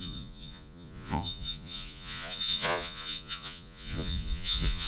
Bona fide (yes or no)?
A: no